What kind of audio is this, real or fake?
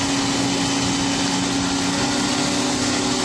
real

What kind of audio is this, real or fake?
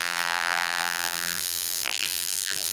fake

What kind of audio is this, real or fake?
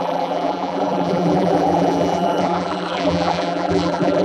fake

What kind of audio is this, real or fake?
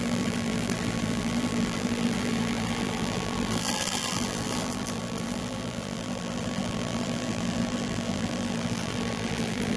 fake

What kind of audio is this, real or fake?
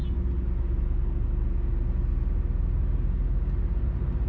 real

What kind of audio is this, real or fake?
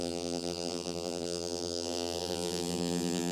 fake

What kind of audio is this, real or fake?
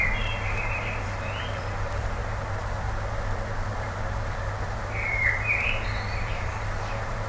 fake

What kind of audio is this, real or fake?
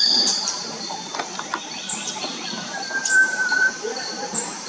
fake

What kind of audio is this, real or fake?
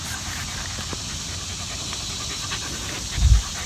real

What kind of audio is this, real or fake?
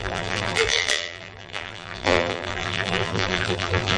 fake